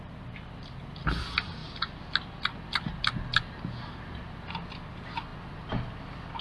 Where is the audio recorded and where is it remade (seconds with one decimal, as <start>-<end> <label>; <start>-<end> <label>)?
0.0-6.4 recorded